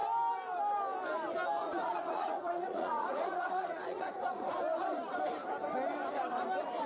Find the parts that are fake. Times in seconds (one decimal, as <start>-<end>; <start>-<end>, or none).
1.6-4.5